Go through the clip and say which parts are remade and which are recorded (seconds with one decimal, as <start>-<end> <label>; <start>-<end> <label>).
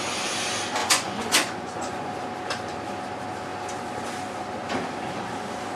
0.0-0.8 recorded; 0.8-2.1 remade; 2.1-5.8 recorded